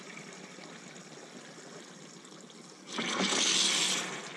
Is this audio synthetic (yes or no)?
no